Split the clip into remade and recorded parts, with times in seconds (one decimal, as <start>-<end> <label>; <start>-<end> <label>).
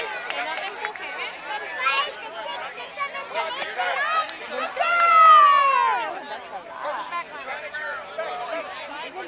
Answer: 0.0-9.3 recorded